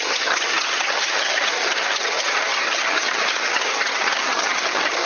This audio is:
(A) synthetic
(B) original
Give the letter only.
A